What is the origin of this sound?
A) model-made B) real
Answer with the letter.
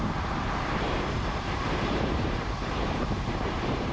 A